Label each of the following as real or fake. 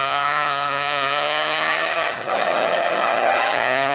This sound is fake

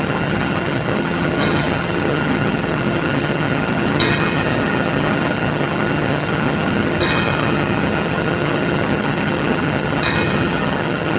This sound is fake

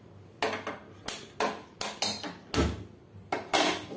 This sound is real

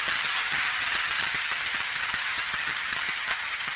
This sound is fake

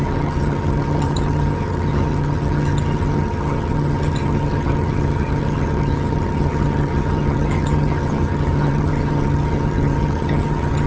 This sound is fake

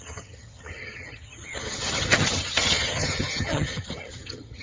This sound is fake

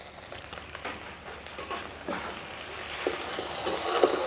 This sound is real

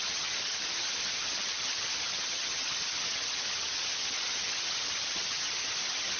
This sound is fake